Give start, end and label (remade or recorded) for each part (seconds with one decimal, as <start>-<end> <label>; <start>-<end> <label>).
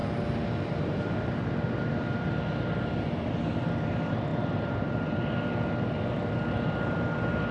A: 0.0-7.5 recorded